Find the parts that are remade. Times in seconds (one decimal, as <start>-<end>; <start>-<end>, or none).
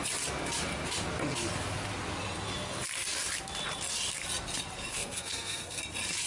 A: 4.9-5.8